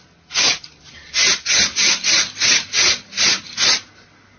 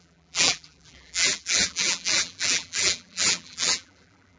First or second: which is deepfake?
second